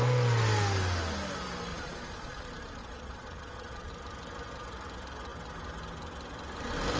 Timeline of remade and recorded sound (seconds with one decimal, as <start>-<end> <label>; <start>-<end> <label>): 0.0-1.7 recorded; 1.7-2.4 remade; 2.4-2.8 recorded; 2.8-3.9 remade; 3.9-7.0 recorded